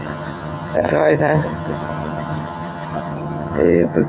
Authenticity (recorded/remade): remade